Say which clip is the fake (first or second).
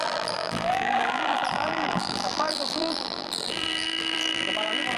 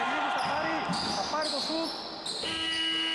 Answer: first